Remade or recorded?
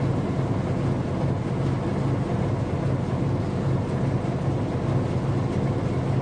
recorded